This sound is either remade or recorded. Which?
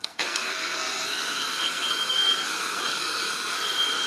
remade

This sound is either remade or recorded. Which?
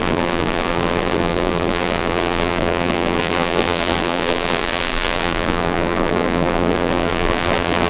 remade